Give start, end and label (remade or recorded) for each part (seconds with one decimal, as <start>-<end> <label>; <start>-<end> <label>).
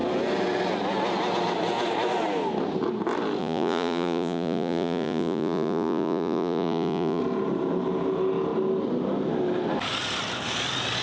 0.0-3.4 recorded; 3.4-7.2 remade; 7.2-11.0 recorded